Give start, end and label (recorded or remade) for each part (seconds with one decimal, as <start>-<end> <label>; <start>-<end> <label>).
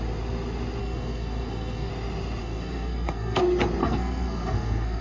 0.0-0.8 recorded; 0.8-1.9 remade; 1.9-2.4 recorded; 2.4-3.4 remade; 3.4-3.8 recorded; 3.8-5.0 remade